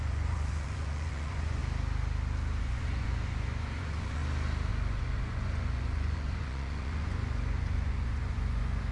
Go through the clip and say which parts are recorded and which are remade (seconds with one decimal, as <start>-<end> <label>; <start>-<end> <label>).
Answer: 0.0-1.6 remade; 1.6-2.6 recorded; 2.6-4.2 remade; 4.2-4.7 recorded; 4.7-8.9 remade